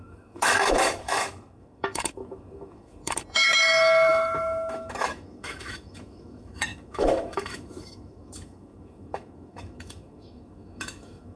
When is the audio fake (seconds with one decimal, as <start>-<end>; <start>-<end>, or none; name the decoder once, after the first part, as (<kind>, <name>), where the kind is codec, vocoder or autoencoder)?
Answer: 0.0-11.4 (autoencoder, DAC-VAE)